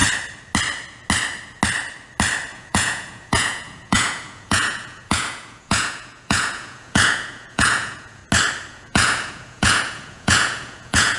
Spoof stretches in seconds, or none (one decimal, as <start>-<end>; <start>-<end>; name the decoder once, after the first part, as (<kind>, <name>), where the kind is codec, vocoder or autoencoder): 2.5-8.2 (vocoder, Vocos); 8.7-11.2